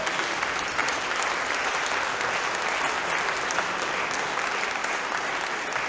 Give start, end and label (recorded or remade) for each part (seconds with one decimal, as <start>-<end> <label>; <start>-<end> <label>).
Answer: 0.0-5.9 recorded